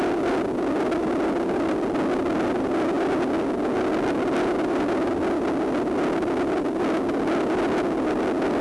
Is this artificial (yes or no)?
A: no